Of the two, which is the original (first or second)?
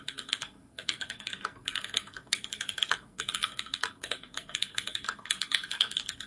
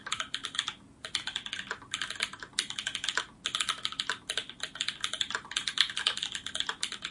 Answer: second